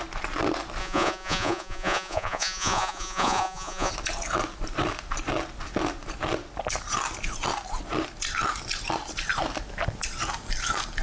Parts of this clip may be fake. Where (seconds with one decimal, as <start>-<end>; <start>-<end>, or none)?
0.8-3.9